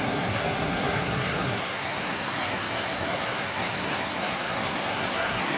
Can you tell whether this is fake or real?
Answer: fake